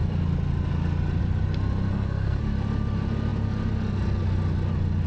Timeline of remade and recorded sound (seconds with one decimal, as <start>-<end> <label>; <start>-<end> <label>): 0.0-1.9 recorded; 1.9-2.4 remade; 2.4-5.1 recorded